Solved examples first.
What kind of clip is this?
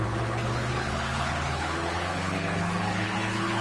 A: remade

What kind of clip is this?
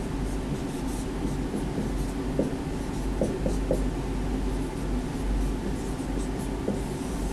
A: recorded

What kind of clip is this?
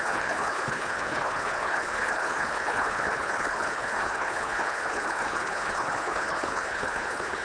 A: remade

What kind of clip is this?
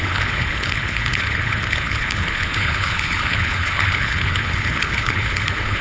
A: remade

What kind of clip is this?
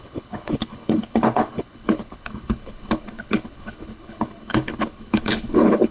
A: remade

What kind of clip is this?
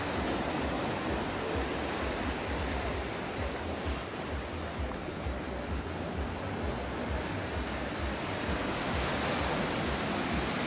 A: recorded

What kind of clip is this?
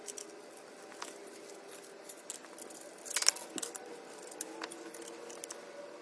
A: recorded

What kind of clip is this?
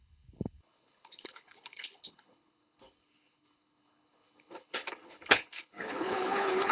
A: remade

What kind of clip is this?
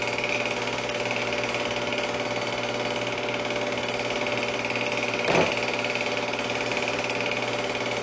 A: recorded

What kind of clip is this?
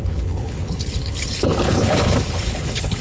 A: remade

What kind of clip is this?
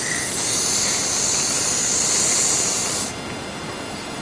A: recorded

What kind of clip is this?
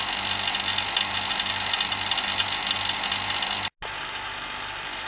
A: recorded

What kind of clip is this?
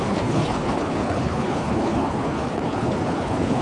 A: remade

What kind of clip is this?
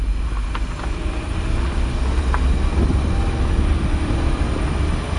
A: recorded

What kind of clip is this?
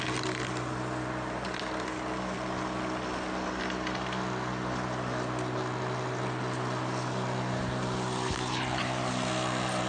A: recorded